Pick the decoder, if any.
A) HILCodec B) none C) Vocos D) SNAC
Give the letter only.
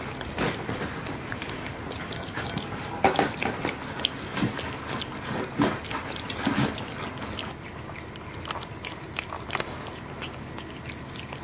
B